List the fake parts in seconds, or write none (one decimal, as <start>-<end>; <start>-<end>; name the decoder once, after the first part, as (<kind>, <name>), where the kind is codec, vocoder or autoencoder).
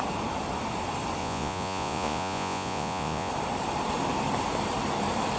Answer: 1.2-3.3 (vocoder, Vocos)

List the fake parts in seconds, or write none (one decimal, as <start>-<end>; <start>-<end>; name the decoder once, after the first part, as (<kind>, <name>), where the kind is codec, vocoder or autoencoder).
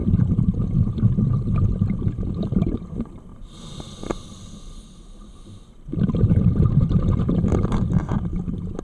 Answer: none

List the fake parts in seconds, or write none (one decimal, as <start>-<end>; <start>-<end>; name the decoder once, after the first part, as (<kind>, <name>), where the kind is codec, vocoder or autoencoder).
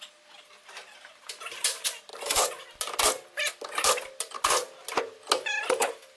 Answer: none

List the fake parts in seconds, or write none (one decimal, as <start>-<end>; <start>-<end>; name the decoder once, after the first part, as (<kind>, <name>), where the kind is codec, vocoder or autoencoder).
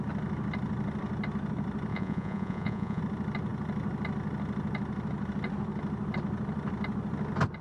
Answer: 1.9-3.0 (vocoder, Vocos)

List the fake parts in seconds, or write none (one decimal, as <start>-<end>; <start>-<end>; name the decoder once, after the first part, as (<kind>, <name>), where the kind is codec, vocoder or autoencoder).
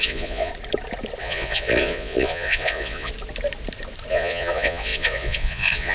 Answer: 0.0-0.5 (vocoder, Vocos); 1.2-3.1; 4.1-5.9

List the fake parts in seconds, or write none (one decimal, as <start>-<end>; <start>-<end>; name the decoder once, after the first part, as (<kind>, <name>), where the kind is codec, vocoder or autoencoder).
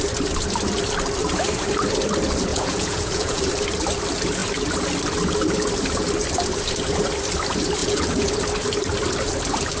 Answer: 2.5-3.4 (vocoder, Vocos); 7.8-8.3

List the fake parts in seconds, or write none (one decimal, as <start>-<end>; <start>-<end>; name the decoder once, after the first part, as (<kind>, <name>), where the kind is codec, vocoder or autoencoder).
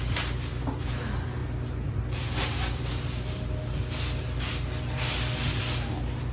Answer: none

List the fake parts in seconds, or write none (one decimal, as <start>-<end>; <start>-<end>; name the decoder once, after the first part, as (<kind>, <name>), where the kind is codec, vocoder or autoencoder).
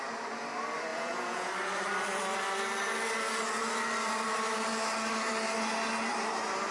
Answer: 0.9-1.5 (vocoder, Vocos)